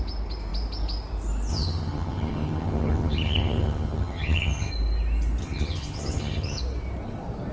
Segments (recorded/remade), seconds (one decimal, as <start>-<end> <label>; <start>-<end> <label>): 0.0-1.5 recorded; 1.5-4.7 remade; 4.7-5.4 recorded; 5.4-6.6 remade; 6.6-7.5 recorded